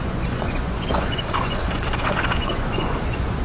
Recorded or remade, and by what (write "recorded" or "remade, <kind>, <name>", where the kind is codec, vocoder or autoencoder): remade, vocoder, Vocos